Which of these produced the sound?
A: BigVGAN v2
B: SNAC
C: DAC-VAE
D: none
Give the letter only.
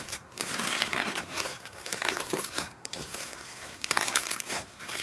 B